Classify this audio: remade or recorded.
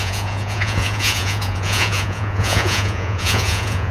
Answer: remade